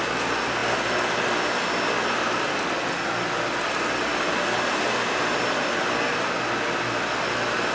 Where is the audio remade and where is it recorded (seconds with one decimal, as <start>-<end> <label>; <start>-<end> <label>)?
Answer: 0.0-7.7 recorded